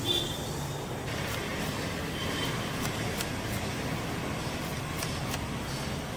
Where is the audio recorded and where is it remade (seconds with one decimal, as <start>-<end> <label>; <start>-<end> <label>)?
0.0-6.2 recorded